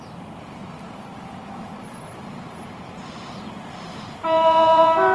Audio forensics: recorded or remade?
remade